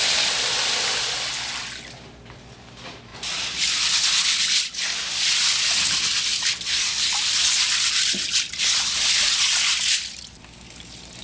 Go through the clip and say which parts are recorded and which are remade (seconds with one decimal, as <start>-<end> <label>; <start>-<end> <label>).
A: 0.0-11.2 recorded

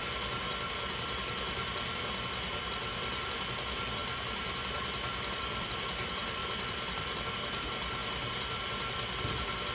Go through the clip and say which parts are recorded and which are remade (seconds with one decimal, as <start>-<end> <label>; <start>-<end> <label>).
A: 0.0-2.9 recorded; 2.9-3.5 remade; 3.5-4.0 recorded; 4.0-5.7 remade; 5.7-6.4 recorded; 6.4-7.3 remade; 7.3-9.7 recorded